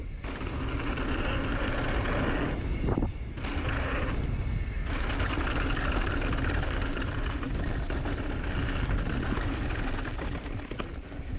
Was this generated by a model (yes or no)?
no